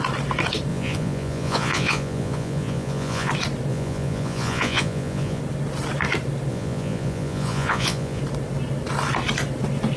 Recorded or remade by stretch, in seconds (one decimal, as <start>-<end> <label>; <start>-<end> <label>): 0.0-0.7 recorded; 0.7-3.3 remade; 3.3-3.7 recorded; 3.7-5.4 remade; 5.4-6.5 recorded; 6.5-8.2 remade; 8.2-10.0 recorded